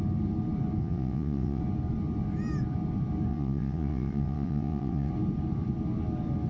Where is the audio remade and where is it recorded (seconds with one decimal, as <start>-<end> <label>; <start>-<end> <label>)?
0.0-0.8 recorded; 0.8-1.6 remade; 1.6-3.3 recorded; 3.3-5.1 remade; 5.1-6.5 recorded